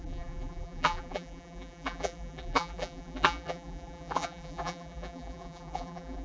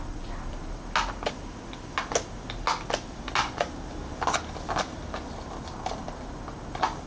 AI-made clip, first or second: first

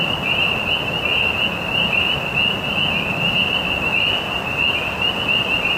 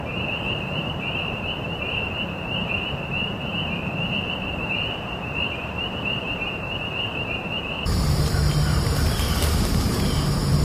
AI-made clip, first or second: second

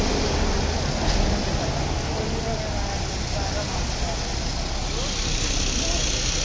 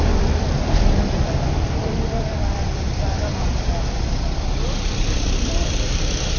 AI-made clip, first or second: second